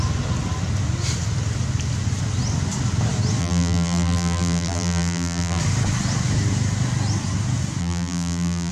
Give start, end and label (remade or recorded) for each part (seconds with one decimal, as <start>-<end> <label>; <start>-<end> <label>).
0.0-3.4 recorded; 3.4-5.6 remade; 5.6-7.8 recorded; 7.8-8.7 remade